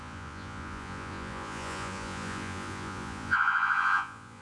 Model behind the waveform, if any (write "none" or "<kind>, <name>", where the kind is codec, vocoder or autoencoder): vocoder, Vocos